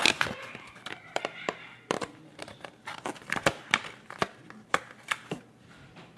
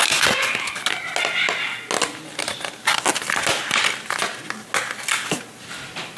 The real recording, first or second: second